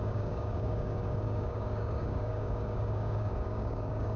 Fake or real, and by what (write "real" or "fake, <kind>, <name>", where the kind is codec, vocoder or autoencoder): fake, codec, DAC